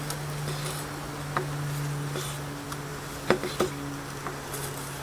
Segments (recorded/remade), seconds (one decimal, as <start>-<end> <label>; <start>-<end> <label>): 0.0-5.0 recorded